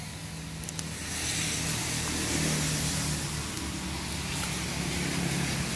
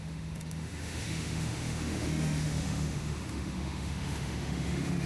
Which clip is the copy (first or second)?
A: second